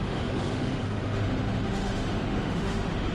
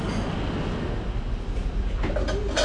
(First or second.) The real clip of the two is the second